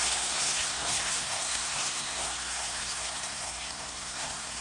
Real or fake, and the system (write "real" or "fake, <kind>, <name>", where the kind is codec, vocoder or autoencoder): fake, codec, SNAC